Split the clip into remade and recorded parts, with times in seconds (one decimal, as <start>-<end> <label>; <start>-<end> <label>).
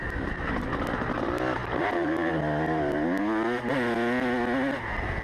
0.0-1.6 recorded; 1.6-2.4 remade; 2.4-5.2 recorded